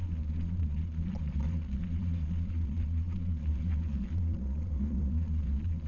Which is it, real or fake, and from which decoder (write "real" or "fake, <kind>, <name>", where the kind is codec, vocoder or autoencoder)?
fake, vocoder, Vocos